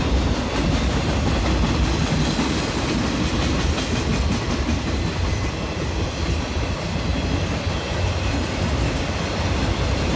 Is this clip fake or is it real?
real